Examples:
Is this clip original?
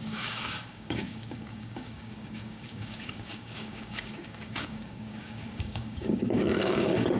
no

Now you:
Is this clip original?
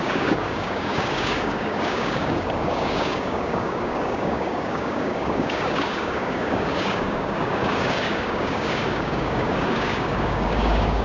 no